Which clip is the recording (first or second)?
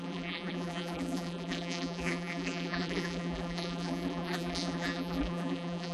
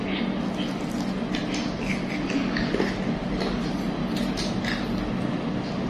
second